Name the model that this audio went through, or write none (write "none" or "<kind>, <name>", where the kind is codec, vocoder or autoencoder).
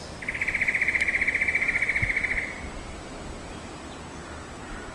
none